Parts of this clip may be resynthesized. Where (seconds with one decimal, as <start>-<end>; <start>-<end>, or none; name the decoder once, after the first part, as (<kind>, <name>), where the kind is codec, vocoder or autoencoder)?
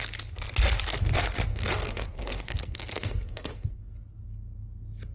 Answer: 1.5-3.9 (codec, SNAC)